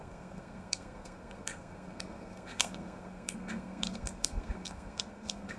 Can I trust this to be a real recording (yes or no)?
no